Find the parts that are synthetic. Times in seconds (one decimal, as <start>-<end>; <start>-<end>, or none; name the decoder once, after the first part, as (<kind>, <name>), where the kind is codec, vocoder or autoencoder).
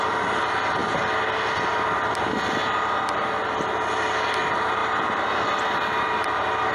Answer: none